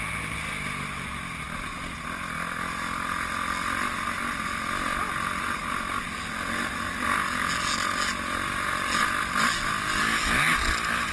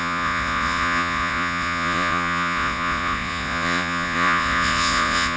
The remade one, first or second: second